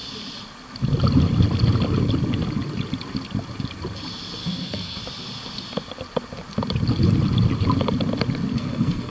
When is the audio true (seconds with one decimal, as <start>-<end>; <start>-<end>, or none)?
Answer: 0.0-4.4; 5.0-8.5